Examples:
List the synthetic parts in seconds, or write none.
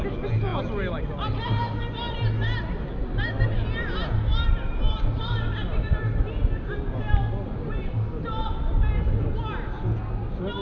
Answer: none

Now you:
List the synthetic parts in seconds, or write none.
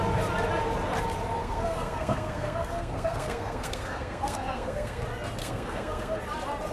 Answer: 1.4-5.0 (codec, SNAC); 5.4-6.2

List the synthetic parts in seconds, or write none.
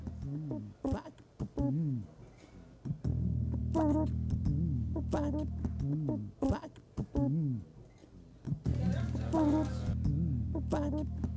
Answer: none